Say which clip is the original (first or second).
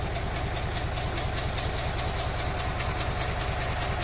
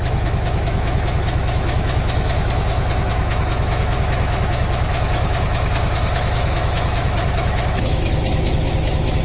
first